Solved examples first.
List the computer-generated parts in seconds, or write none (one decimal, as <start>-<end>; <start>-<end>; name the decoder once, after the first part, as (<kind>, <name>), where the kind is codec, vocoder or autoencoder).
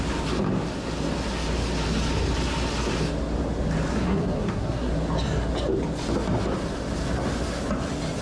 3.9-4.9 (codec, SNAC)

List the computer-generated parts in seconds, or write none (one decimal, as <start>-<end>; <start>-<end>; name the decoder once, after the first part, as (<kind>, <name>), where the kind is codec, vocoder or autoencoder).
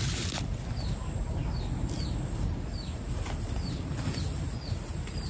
none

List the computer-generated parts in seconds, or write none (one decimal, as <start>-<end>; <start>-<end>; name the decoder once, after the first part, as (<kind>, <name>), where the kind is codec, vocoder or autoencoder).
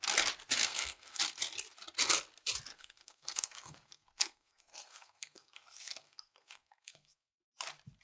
0.6-1.2 (codec, SNAC); 2.7-7.5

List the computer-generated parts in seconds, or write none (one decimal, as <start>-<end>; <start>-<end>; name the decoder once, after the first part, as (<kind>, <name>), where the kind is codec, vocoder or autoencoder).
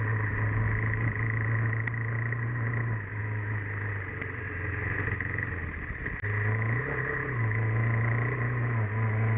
none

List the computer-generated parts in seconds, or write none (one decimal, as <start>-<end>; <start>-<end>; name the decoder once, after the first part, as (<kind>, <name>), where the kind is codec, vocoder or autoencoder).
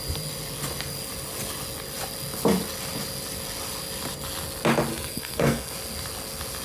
4.9-5.7 (codec, SNAC)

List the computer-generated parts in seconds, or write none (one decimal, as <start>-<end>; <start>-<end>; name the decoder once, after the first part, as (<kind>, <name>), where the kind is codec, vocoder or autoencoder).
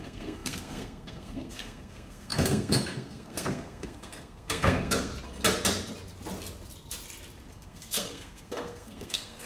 0.0-5.1 (codec, SNAC); 7.5-9.5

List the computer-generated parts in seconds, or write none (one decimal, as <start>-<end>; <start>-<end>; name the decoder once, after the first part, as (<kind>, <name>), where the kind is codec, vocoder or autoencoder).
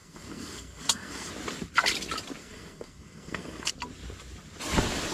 0.0-1.3 (codec, SNAC); 2.4-3.7